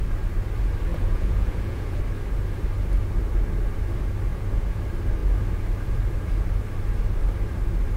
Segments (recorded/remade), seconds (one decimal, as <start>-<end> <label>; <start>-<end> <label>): 0.0-0.9 recorded; 0.9-2.0 remade; 2.0-4.3 recorded; 4.3-4.8 remade; 4.8-8.0 recorded